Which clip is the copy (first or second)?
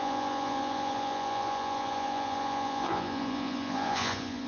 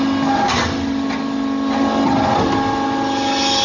first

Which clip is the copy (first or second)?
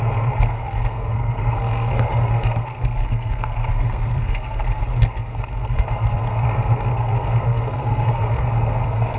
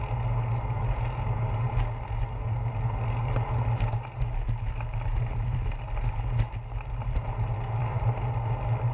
first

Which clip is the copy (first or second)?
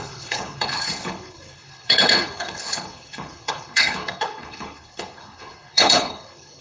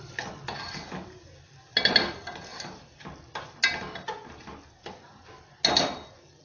first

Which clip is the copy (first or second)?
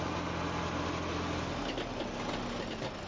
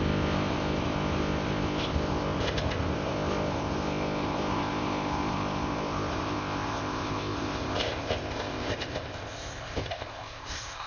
second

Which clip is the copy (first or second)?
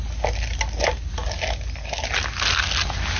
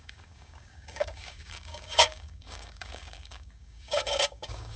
second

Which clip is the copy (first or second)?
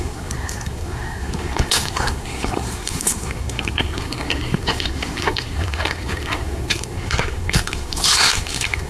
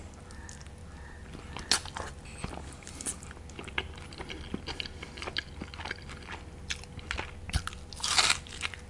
first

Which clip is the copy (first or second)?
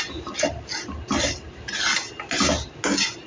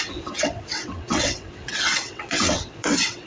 second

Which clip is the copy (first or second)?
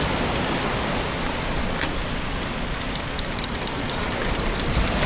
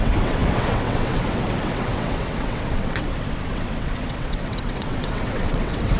second